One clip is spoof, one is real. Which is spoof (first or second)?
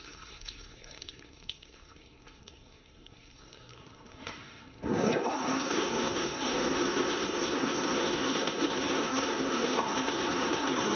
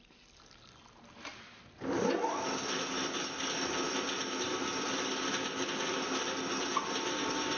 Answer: first